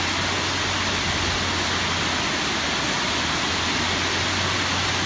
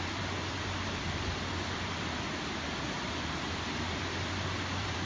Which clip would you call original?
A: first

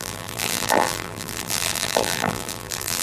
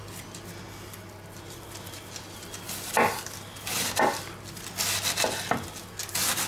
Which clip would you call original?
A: second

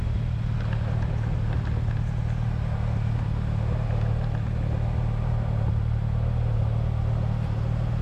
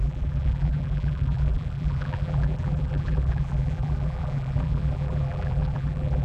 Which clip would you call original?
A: first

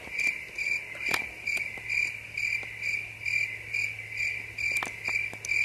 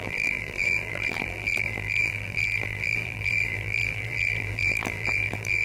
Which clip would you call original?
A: first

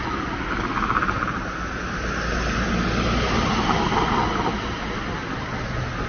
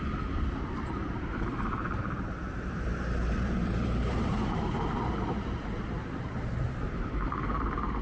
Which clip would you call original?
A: first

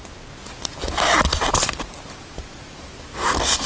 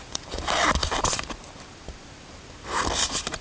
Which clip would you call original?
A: first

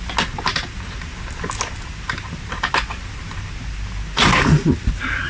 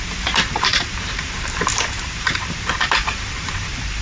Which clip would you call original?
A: first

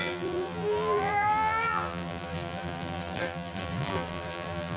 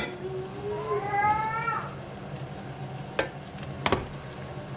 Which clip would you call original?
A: second